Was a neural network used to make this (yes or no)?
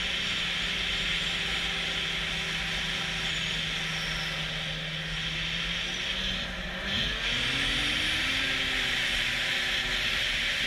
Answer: no